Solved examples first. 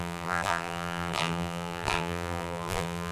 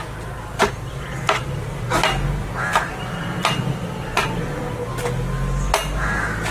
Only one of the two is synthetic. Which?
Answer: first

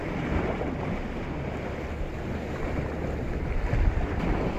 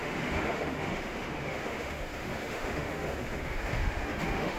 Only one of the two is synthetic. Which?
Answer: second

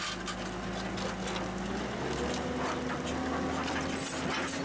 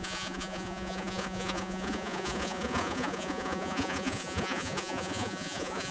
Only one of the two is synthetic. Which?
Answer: second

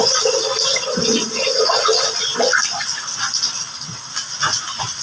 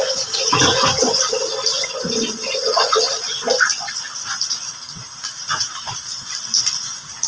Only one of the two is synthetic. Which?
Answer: second